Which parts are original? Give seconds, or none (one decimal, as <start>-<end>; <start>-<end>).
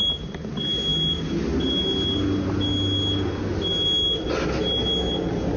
0.0-5.6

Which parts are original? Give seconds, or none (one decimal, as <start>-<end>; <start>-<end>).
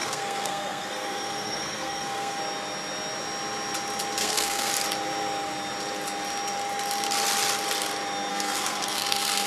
2.4-4.2; 4.7-8.3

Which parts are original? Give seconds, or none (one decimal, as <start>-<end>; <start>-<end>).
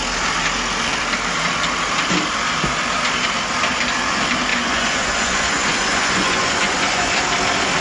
0.0-4.5; 7.2-7.8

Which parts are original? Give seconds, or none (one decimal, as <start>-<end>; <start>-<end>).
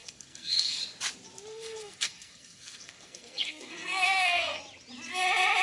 0.8-1.5; 4.6-5.6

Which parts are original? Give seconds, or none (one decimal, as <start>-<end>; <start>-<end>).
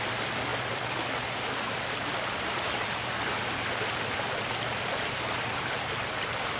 none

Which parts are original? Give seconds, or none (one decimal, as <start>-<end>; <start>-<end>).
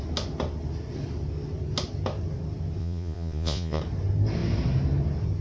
0.0-2.8; 3.8-5.4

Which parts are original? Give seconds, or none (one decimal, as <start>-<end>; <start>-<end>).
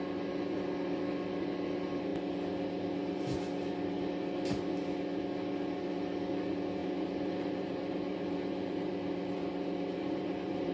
0.0-6.8; 8.9-9.9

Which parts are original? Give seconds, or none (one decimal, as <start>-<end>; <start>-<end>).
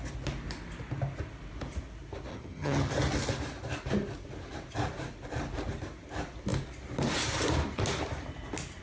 0.0-2.3; 2.9-8.8